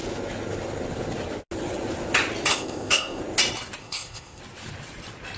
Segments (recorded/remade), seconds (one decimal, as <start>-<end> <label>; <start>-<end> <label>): 0.0-2.5 recorded; 2.5-3.2 remade; 3.2-3.8 recorded; 3.8-4.4 remade; 4.4-5.4 recorded